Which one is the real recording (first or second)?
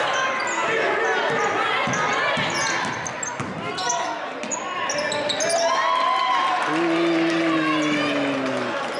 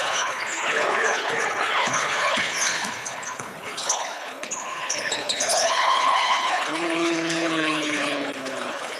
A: first